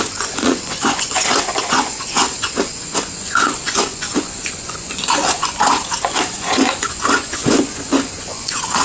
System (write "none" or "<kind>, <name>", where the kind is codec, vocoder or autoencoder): vocoder, Vocos